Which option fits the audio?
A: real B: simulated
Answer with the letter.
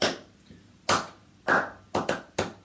A